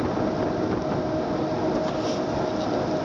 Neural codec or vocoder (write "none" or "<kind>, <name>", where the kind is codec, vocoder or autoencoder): none